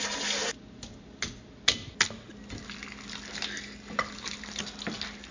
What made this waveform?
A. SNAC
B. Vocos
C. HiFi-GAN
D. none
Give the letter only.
D